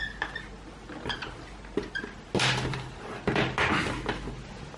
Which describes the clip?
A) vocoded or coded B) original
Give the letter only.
B